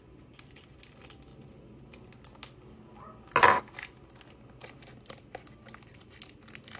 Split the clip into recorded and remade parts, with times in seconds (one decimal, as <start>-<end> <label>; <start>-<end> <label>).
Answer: 0.0-6.8 recorded